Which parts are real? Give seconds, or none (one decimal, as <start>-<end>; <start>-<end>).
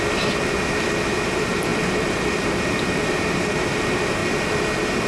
4.2-5.1